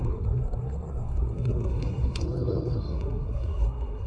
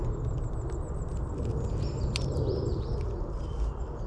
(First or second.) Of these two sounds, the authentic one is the second